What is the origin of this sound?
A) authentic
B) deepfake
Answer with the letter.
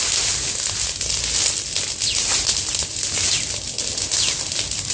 A